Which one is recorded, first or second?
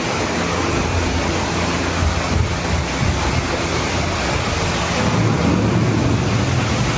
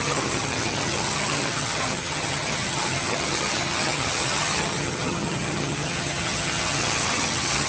first